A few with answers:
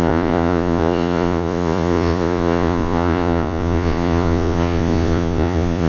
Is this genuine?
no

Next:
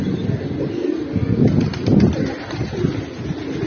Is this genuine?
yes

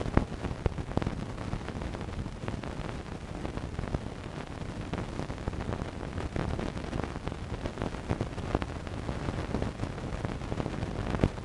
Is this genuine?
yes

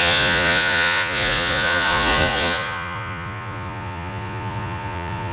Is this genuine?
no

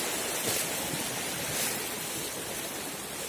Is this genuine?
yes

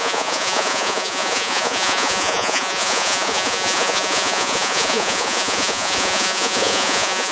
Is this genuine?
no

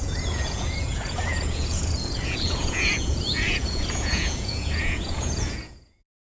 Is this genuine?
no